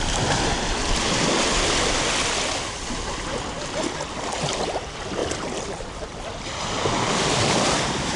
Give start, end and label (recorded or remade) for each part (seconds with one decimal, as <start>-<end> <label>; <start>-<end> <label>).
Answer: 0.0-5.2 recorded; 5.2-8.2 remade